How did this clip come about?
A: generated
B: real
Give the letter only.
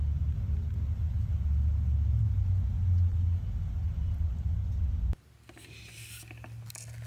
B